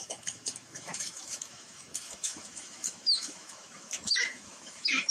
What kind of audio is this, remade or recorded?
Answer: remade